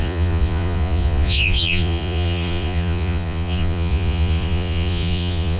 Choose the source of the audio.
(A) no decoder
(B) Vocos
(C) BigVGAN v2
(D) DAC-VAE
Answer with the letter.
B